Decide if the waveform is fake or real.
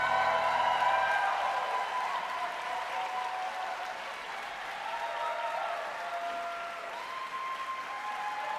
real